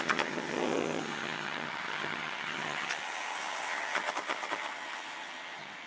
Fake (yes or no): yes